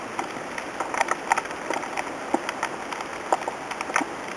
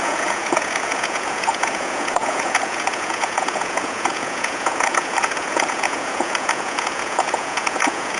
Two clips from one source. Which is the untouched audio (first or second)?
first